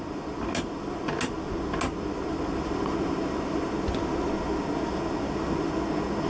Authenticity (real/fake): real